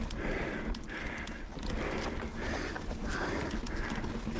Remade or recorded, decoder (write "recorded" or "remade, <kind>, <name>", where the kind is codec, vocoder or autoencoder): recorded